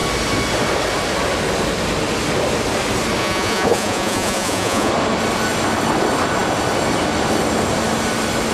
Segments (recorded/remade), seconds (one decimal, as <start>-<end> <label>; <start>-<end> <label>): 0.0-3.2 recorded; 3.2-4.9 remade; 4.9-8.5 recorded

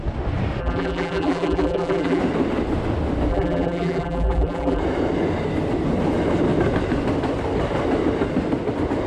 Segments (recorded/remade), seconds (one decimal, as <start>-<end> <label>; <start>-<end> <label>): 0.0-0.6 recorded; 0.6-2.2 remade; 2.2-3.3 recorded; 3.3-4.8 remade; 4.8-9.1 recorded

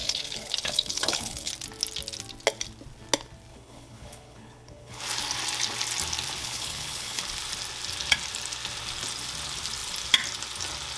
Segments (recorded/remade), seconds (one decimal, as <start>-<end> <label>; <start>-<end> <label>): 0.0-1.5 remade; 1.5-3.5 recorded; 3.5-5.0 remade; 5.0-6.4 recorded; 6.4-7.2 remade; 7.2-11.0 recorded